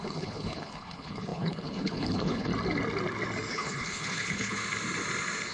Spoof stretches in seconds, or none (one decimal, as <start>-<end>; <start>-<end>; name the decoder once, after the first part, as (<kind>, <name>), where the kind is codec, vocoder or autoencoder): 0.0-2.5 (codec, HILCodec); 3.5-4.6